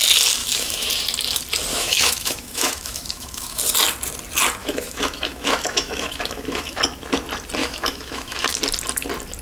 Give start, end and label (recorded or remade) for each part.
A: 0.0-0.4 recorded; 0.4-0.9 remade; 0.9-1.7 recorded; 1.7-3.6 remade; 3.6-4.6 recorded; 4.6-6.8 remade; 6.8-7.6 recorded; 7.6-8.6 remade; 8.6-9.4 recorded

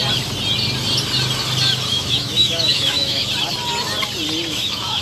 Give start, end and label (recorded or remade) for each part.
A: 0.0-1.9 recorded; 1.9-3.2 remade; 3.2-4.5 recorded; 4.5-5.0 remade

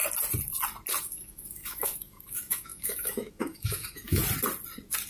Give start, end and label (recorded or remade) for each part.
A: 0.0-1.0 recorded; 1.0-4.2 remade; 4.2-5.1 recorded

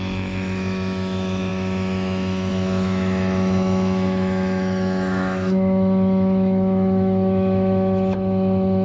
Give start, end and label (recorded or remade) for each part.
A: 0.0-8.8 remade

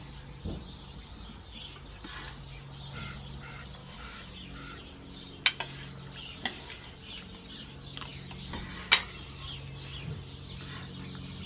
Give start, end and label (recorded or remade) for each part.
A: 0.0-3.8 recorded; 3.8-4.3 remade; 4.3-11.5 recorded